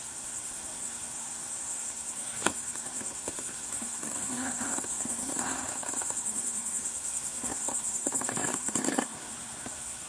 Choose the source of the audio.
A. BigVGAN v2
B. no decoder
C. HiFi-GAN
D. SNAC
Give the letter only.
D